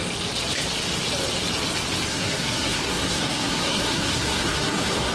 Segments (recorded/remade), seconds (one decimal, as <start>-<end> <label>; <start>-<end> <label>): 0.0-2.1 recorded; 2.1-5.1 remade